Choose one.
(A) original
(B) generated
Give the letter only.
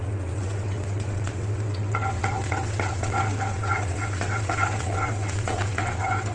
B